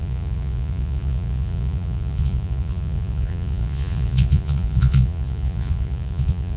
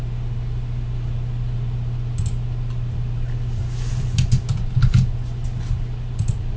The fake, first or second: first